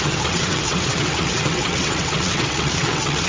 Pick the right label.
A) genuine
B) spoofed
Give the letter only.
B